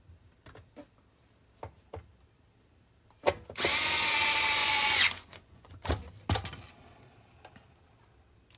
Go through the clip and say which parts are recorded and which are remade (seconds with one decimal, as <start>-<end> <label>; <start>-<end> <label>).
0.0-4.6 recorded; 4.6-5.9 remade; 5.9-8.6 recorded